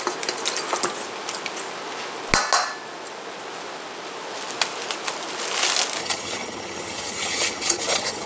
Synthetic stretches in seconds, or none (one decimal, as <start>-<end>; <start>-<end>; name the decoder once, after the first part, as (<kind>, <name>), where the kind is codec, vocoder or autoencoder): 6.0-8.3 (vocoder, HiFi-GAN)